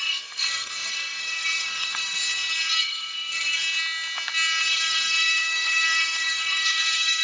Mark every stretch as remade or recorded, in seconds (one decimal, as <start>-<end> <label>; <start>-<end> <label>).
0.0-2.2 remade; 2.2-2.8 recorded; 2.8-3.6 remade; 3.6-4.7 recorded; 4.7-7.2 remade